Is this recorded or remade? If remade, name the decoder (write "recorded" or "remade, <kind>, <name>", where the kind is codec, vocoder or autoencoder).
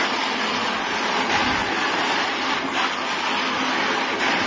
recorded